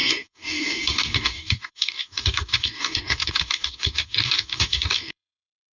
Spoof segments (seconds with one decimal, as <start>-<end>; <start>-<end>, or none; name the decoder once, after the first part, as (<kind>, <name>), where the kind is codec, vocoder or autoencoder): 0.0-5.8 (codec, DAC)

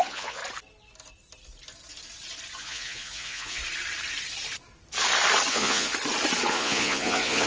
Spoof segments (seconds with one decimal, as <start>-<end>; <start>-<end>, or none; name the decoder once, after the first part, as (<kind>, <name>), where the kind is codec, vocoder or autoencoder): 0.0-0.4 (vocoder, Vocos); 2.6-3.6; 5.5-5.9; 6.5-7.5